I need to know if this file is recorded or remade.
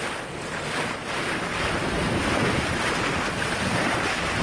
recorded